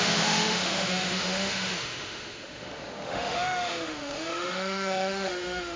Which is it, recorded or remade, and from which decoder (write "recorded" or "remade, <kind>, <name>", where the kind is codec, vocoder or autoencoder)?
remade, autoencoder, DAC-VAE